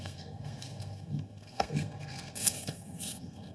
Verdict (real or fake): fake